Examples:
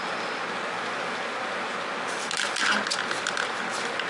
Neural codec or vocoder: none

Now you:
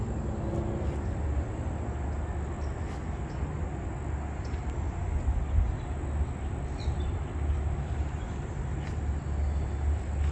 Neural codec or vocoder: none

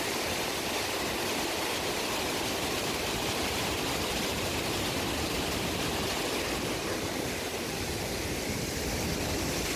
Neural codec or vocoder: vocoder, BigVGAN v2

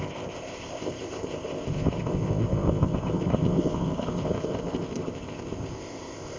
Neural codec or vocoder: codec, ZipCodec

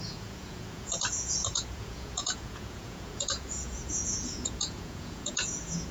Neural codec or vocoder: vocoder, Vocos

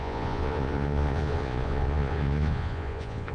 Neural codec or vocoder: vocoder, Vocos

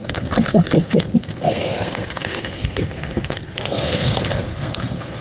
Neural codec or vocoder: codec, SNAC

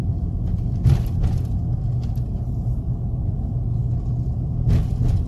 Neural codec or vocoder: none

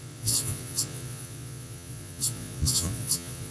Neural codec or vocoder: vocoder, Vocos